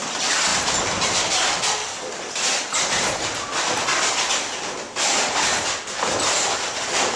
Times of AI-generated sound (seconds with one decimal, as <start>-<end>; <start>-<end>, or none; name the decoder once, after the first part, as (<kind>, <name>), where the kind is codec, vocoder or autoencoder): none